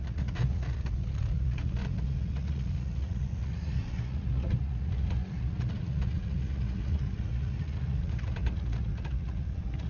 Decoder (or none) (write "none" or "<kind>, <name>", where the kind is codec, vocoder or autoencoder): vocoder, Vocos